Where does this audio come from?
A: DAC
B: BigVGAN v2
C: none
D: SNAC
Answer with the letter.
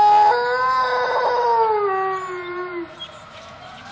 C